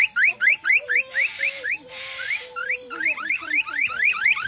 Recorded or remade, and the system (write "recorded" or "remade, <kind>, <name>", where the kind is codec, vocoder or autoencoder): remade, vocoder, BigVGAN v2